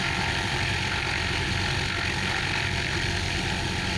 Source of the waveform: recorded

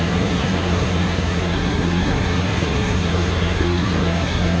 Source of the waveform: remade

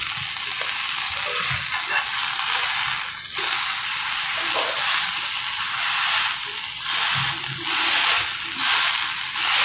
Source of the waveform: recorded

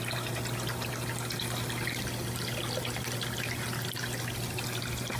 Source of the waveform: recorded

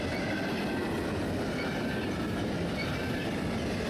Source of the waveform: recorded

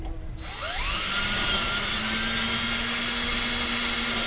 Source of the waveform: recorded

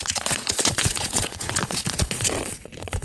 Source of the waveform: remade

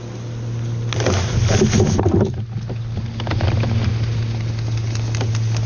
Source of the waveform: recorded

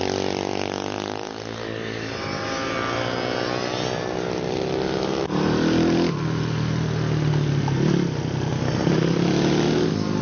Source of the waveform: recorded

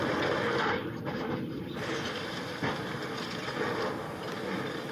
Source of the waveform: recorded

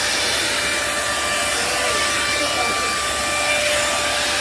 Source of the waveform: recorded